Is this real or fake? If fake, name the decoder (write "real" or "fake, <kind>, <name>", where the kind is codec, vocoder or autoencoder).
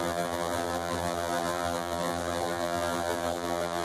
fake, vocoder, BigVGAN v2